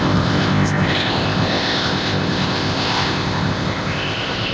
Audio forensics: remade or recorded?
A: remade